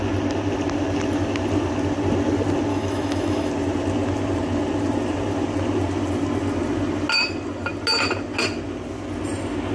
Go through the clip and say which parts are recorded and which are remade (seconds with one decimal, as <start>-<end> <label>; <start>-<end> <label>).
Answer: 0.0-2.7 recorded; 2.7-3.5 remade; 3.5-9.7 recorded